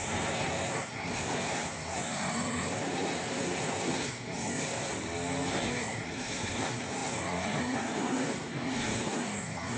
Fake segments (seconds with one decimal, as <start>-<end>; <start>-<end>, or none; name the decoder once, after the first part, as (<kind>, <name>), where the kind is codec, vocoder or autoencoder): 0.0-4.9 (codec, SNAC); 5.5-9.8